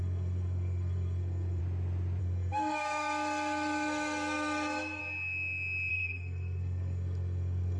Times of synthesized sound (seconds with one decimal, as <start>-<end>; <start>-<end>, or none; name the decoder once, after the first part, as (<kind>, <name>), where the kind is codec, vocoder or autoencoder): 0.0-1.6 (codec, SNAC); 2.2-5.0; 5.9-7.8